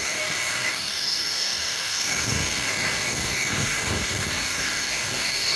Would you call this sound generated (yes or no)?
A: yes